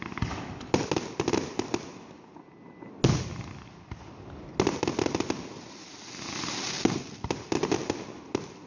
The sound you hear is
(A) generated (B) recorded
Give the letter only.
B